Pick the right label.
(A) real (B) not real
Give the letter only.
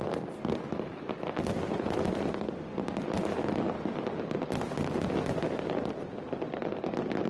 A